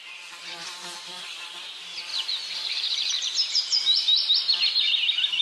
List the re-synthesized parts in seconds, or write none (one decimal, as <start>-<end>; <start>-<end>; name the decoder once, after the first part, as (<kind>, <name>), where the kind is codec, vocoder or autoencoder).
0.4-1.2 (vocoder, BigVGAN v2); 2.1-4.3